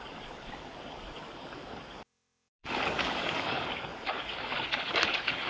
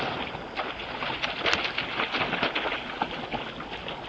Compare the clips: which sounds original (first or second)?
second